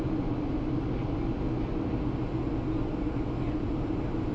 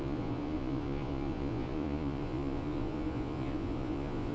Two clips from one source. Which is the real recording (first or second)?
first